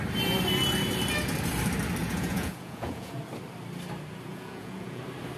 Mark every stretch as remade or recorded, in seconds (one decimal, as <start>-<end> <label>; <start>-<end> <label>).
0.0-2.0 recorded; 2.0-3.2 remade; 3.2-4.3 recorded; 4.3-5.0 remade; 5.0-5.4 recorded